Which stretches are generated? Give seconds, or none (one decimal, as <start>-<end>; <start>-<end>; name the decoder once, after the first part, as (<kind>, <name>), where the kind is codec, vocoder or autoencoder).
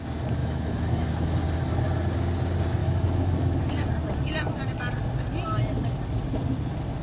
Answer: 0.4-1.4 (autoencoder, DAC-VAE); 2.8-3.6